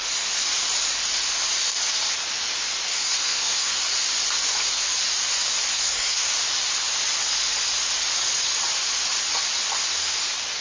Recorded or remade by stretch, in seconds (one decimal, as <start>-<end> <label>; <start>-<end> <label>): 0.0-2.9 recorded; 2.9-3.7 remade; 3.7-5.7 recorded; 5.7-6.3 remade; 6.3-10.6 recorded